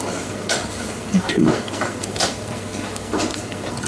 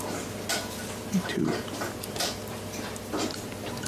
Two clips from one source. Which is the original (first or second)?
second